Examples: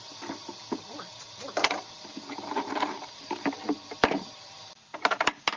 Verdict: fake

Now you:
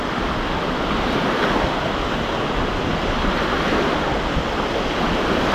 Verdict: real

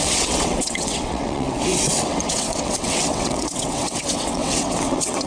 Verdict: fake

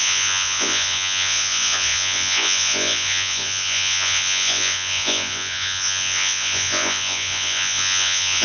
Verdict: fake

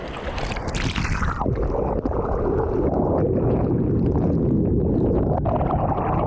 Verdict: real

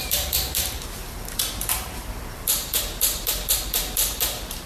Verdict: fake